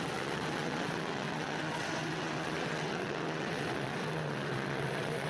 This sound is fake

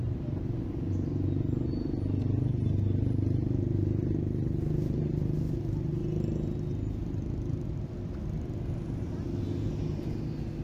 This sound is real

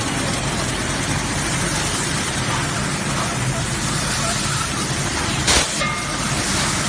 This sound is real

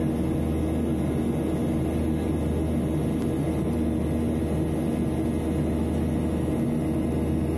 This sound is real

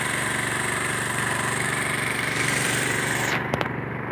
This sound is fake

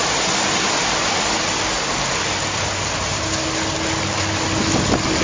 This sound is real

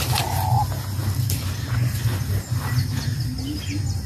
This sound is real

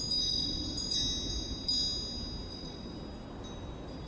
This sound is real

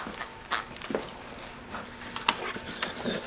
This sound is real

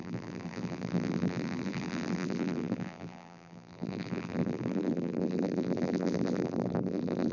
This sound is fake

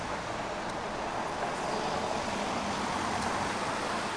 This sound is real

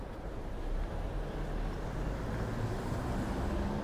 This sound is real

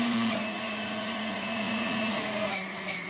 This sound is fake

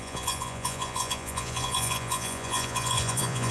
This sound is fake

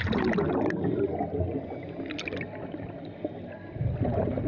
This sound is real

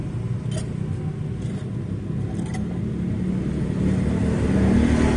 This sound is real